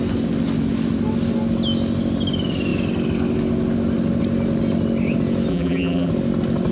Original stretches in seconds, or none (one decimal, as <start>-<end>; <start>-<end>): 0.0-5.5; 6.1-6.7